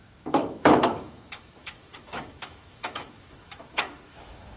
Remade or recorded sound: remade